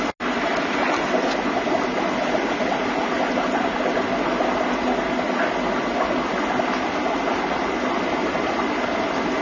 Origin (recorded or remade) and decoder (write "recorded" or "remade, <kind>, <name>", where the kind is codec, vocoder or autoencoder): recorded